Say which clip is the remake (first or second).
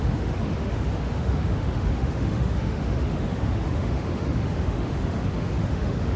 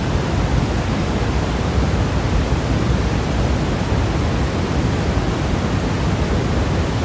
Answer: first